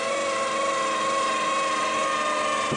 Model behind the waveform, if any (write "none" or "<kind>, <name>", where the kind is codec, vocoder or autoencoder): none